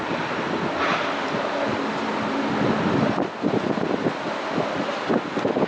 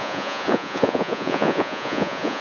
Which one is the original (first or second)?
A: first